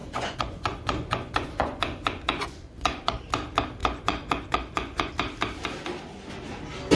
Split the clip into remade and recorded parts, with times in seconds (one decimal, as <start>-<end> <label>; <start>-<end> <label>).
0.0-3.2 remade; 3.2-3.8 recorded; 3.8-5.1 remade; 5.1-7.0 recorded